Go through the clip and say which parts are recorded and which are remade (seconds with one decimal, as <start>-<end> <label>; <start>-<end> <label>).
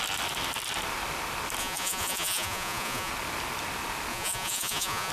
0.0-1.6 recorded; 1.6-3.1 remade; 3.1-4.1 recorded; 4.1-5.1 remade